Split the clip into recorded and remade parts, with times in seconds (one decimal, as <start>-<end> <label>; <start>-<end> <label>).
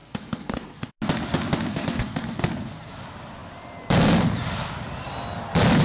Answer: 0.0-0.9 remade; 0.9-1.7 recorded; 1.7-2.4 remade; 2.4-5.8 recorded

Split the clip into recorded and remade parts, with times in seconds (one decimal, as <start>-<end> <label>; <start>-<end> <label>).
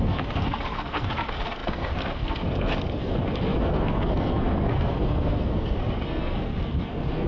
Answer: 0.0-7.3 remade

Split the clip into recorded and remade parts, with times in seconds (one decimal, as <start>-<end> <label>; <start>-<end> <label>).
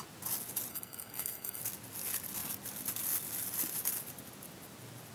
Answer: 0.0-0.7 recorded; 0.7-1.6 remade; 1.6-5.1 recorded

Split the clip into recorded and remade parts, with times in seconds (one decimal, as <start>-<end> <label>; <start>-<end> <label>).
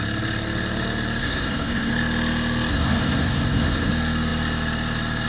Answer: 0.0-1.2 recorded; 1.2-1.9 remade; 1.9-2.7 recorded; 2.7-3.9 remade; 3.9-5.3 recorded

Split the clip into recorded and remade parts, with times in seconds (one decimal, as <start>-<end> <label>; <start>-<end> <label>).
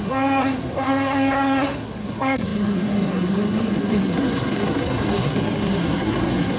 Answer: 0.0-6.6 remade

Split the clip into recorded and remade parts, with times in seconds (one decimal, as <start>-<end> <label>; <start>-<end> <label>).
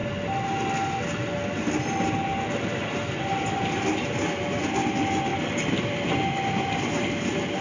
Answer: 0.0-7.6 recorded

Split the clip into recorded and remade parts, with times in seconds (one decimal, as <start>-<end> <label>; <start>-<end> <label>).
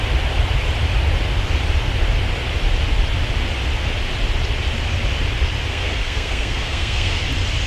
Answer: 0.0-5.7 recorded; 5.7-7.2 remade; 7.2-7.7 recorded